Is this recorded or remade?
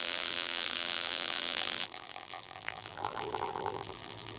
remade